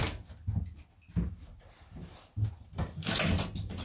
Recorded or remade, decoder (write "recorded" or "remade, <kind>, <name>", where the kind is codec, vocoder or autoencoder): recorded